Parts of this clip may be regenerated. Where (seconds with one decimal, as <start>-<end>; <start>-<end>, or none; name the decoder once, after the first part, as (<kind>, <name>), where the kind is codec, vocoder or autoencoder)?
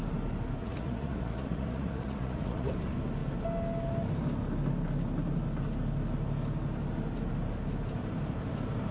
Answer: 0.6-2.7 (vocoder, Vocos)